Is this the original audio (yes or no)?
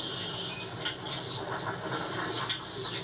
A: yes